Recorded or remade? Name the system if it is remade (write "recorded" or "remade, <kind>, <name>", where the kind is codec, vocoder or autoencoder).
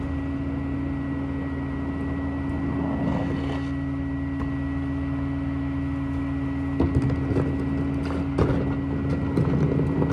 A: recorded